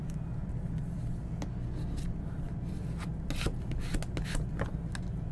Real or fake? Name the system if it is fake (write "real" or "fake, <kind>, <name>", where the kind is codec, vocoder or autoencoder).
real